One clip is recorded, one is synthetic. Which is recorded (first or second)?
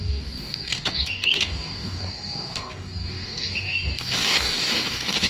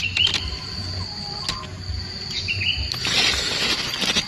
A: second